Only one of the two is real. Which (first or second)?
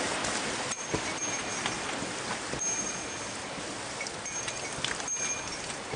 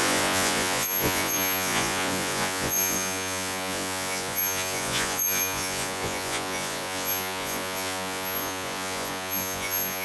first